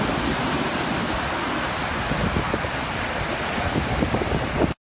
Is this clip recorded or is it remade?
recorded